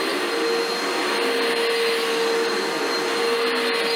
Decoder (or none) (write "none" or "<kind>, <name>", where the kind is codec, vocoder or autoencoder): none